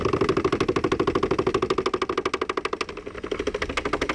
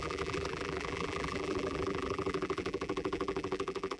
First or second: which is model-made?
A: second